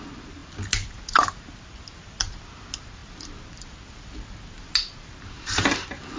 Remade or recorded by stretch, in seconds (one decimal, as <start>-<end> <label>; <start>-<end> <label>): 0.0-6.2 recorded